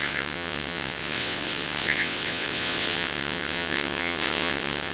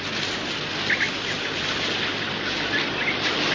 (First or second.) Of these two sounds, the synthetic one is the first